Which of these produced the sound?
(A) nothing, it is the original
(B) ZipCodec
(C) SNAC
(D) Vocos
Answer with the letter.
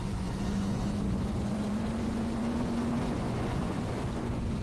D